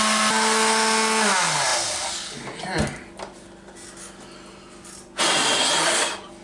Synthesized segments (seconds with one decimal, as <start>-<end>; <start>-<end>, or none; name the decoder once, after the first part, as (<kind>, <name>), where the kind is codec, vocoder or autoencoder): none